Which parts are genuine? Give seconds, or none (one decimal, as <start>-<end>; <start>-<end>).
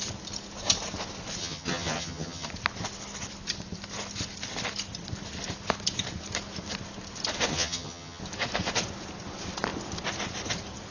0.0-1.4; 2.5-7.5; 8.2-10.9